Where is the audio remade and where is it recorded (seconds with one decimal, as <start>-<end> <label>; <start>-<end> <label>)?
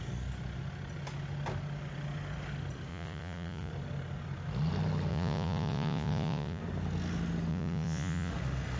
0.0-2.9 recorded; 2.9-3.7 remade; 3.7-5.1 recorded; 5.1-6.6 remade; 6.6-7.5 recorded; 7.5-8.3 remade; 8.3-8.8 recorded